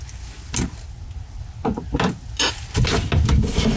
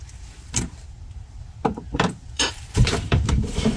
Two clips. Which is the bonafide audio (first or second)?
first